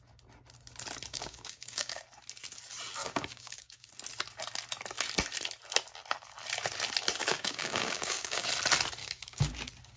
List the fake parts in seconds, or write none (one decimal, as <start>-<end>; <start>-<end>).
1.1-2.0; 3.0-3.9; 7.2-8.5; 9.0-9.5